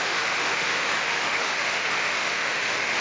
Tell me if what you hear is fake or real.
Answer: fake